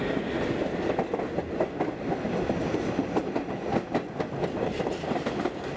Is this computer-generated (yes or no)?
no